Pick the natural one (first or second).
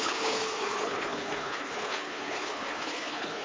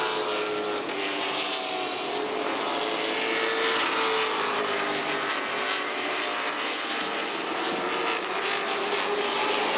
second